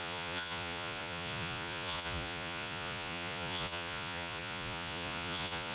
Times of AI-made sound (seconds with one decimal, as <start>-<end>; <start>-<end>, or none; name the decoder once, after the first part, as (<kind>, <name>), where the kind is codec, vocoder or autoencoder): 0.0-5.7 (vocoder, Vocos)